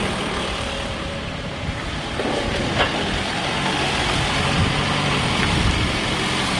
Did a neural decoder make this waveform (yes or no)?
yes